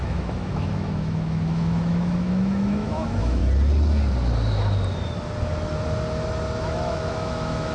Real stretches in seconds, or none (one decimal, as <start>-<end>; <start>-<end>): 3.4-6.6